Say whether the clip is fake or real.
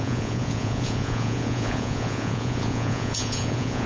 fake